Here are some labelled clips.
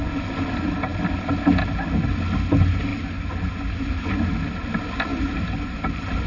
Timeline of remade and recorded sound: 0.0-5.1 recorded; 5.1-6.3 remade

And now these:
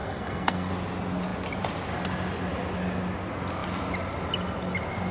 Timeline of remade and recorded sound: 0.0-0.7 remade; 0.7-5.1 recorded

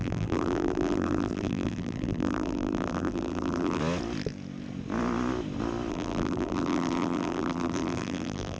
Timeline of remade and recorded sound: 0.0-3.8 remade; 3.8-5.9 recorded; 5.9-8.6 remade

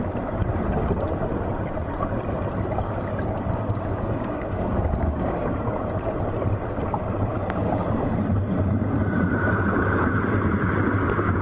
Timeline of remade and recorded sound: 0.0-3.1 recorded; 3.1-5.5 remade; 5.5-7.3 recorded; 7.3-8.0 remade; 8.0-11.4 recorded